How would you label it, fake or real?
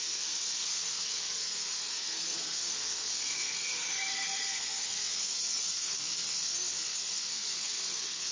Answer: fake